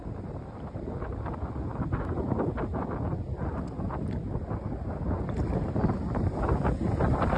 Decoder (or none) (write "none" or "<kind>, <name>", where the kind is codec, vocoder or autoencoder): none